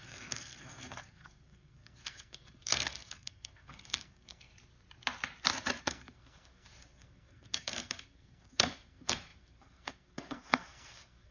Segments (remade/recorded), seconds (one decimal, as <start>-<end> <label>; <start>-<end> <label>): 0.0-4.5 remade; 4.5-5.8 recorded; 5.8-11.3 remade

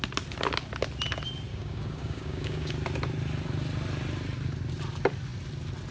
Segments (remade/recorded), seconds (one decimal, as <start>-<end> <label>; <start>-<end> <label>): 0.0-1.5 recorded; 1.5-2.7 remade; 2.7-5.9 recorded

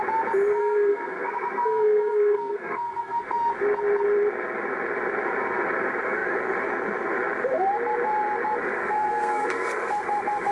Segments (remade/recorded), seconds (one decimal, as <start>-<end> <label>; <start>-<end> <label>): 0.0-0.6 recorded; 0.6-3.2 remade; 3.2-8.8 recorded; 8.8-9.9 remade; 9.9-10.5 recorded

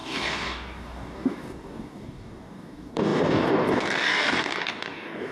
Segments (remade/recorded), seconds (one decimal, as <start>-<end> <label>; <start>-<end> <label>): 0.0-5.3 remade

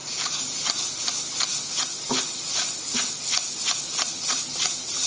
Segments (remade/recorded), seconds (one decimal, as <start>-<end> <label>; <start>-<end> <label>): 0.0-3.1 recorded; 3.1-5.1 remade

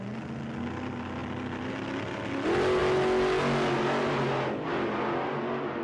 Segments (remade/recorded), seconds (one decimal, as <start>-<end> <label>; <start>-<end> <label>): 0.0-5.8 recorded

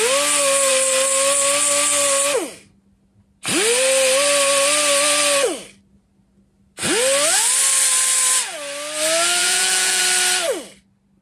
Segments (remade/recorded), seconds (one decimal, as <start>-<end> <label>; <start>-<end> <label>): 0.0-9.4 recorded; 9.4-10.0 remade; 10.0-11.2 recorded

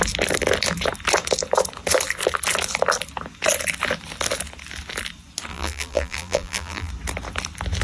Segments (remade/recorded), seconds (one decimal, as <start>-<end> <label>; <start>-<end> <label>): 0.0-5.5 recorded; 5.5-6.9 remade; 6.9-7.8 recorded